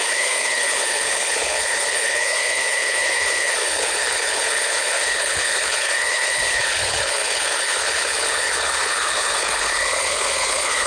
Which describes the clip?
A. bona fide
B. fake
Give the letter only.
B